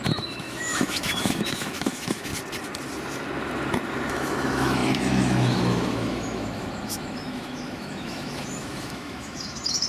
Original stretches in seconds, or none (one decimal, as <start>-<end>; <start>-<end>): 2.3-4.1